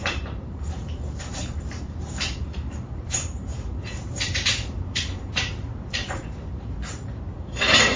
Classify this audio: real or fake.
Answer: fake